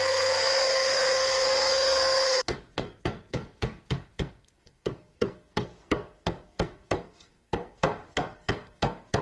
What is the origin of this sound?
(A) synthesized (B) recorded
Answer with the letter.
A